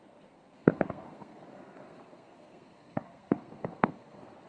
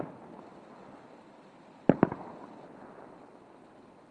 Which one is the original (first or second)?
second